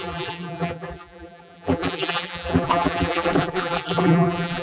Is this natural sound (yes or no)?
no